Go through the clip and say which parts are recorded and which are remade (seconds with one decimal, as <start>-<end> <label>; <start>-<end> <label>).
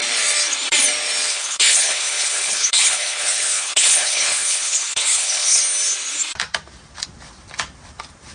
0.0-1.3 recorded; 1.3-5.6 remade; 5.6-8.3 recorded